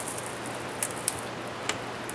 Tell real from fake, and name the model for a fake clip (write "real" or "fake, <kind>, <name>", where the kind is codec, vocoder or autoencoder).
real